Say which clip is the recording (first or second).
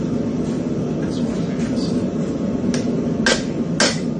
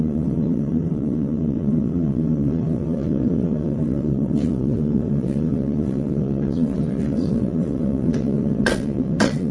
first